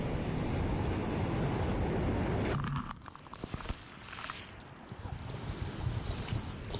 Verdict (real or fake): real